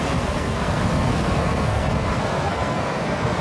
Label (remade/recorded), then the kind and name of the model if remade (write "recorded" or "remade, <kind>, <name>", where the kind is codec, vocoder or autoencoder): remade, codec, SNAC